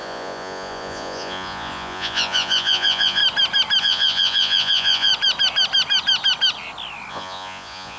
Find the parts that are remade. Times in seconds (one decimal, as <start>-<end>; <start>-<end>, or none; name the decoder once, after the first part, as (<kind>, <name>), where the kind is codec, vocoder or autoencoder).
0.0-3.2 (vocoder, Vocos); 3.8-5.1; 7.1-8.0